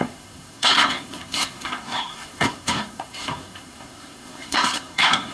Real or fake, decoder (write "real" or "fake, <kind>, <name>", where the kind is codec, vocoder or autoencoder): fake, codec, SNAC